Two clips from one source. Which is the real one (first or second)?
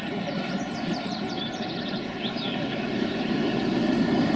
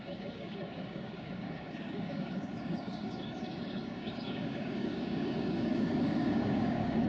first